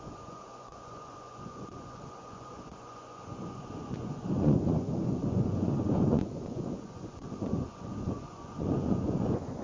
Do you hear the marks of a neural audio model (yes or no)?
yes